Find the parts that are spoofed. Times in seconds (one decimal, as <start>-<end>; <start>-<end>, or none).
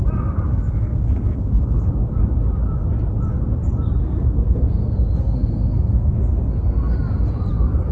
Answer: 0.5-1.9; 4.0-6.9